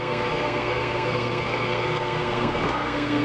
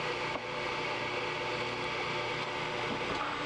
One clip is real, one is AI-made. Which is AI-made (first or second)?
first